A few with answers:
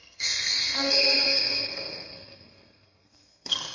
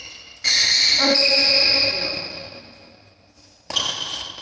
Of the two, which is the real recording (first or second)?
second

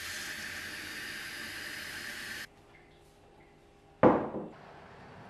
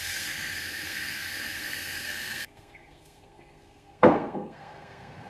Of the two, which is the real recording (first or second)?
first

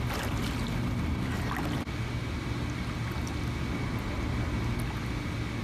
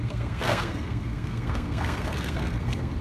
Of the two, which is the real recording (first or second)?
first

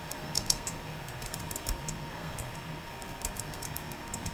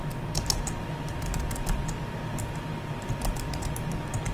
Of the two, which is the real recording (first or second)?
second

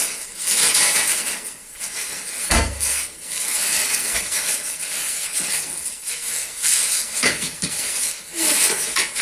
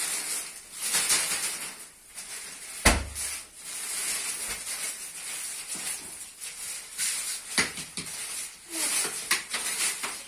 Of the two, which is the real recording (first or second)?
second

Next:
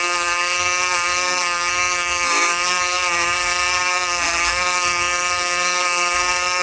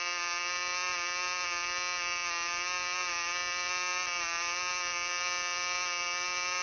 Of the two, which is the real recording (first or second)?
second